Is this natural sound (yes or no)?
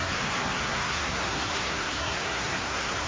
no